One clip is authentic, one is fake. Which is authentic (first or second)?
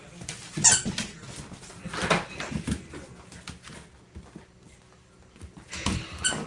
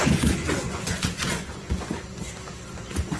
first